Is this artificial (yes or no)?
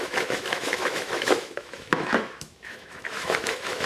yes